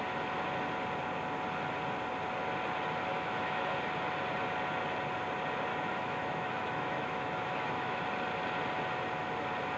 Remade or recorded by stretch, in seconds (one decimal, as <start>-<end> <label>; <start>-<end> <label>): 0.0-3.1 recorded; 3.1-3.7 remade; 3.7-5.7 recorded; 5.7-8.0 remade; 8.0-9.8 recorded